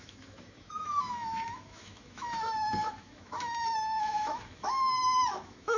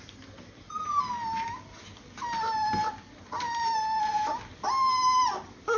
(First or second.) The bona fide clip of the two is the second